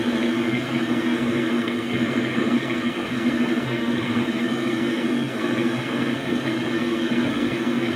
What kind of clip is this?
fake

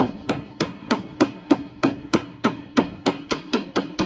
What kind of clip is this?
fake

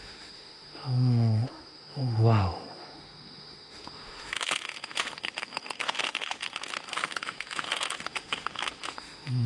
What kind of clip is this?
fake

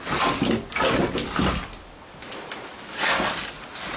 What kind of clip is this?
real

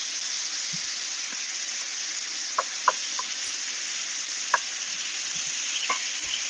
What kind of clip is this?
real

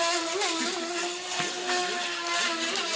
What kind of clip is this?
real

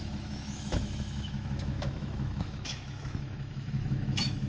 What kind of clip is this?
fake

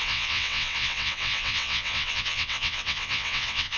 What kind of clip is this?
fake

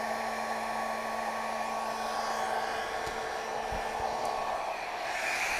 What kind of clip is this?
real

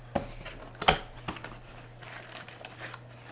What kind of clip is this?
real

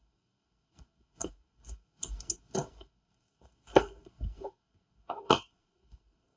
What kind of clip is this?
fake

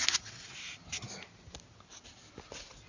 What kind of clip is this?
real